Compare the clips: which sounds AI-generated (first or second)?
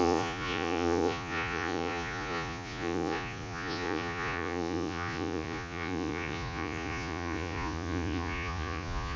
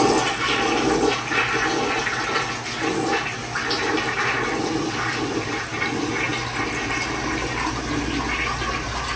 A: first